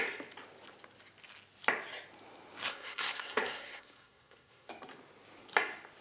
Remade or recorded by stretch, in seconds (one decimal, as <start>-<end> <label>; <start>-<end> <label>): 0.0-2.7 recorded; 2.7-4.7 remade; 4.7-6.0 recorded